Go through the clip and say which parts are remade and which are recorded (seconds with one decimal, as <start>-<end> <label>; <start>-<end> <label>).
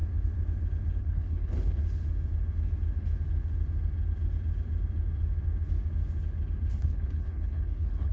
0.0-1.0 recorded; 1.0-1.8 remade; 1.8-6.7 recorded; 6.7-8.1 remade